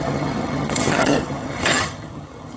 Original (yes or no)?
no